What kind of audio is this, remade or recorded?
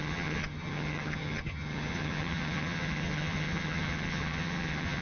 remade